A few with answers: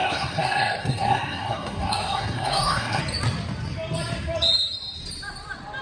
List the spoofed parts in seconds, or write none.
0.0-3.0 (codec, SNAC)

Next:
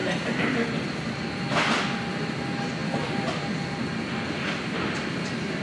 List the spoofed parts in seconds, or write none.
2.8-3.5 (vocoder, BigVGAN v2)

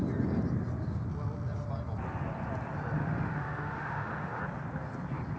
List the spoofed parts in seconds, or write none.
3.0-4.4 (autoencoder, DAC-VAE)

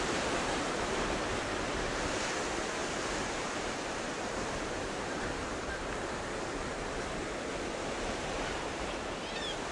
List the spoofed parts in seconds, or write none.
0.0-9.7 (vocoder, BigVGAN v2)

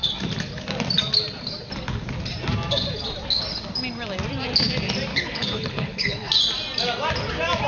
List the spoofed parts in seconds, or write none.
5.1-6.3 (codec, HILCodec)

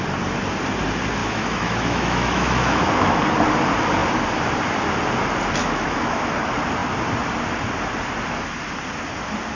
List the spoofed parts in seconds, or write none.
1.2-3.2 (autoencoder, DAC-VAE); 5.6-6.3

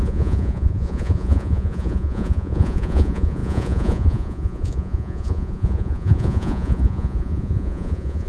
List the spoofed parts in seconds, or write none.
0.0-8.3 (vocoder, Vocos)